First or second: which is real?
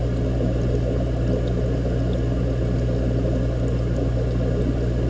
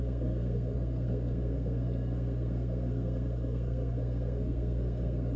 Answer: first